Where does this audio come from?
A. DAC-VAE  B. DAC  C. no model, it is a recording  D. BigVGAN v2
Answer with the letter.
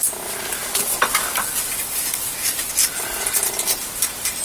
D